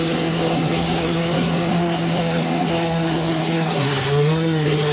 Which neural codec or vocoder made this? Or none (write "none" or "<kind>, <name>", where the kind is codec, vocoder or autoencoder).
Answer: codec, SNAC